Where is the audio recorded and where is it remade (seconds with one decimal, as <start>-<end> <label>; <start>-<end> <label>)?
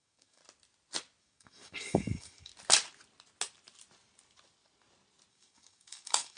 0.0-0.4 remade; 0.4-1.2 recorded; 1.2-2.5 remade; 2.5-5.3 recorded; 5.3-6.4 remade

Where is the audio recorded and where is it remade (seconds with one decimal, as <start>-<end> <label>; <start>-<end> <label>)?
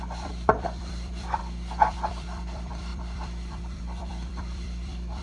0.0-1.4 remade; 1.4-1.9 recorded; 1.9-5.2 remade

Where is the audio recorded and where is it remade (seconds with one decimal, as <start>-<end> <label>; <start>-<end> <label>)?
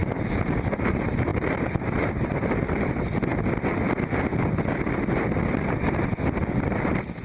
0.0-0.9 recorded; 0.9-3.3 remade; 3.3-6.6 recorded; 6.6-7.2 remade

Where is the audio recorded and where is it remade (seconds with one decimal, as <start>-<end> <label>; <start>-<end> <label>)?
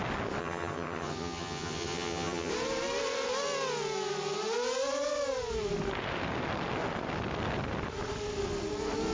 0.0-0.4 recorded; 0.4-2.5 remade; 2.5-9.1 recorded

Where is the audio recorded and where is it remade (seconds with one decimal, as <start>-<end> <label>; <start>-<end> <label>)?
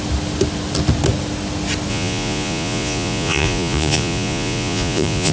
0.0-1.9 recorded; 1.9-5.3 remade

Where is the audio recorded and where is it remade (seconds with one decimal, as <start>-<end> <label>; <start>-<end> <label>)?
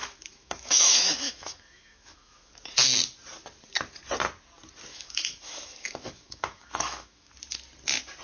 0.0-2.5 remade; 2.5-4.9 recorded; 4.9-7.3 remade; 7.3-8.2 recorded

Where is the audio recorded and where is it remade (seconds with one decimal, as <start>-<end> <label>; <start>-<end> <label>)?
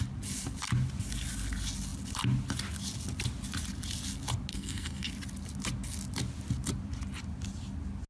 0.0-4.5 recorded; 4.5-5.1 remade; 5.1-8.1 recorded